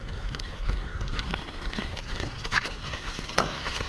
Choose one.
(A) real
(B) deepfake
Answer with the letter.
B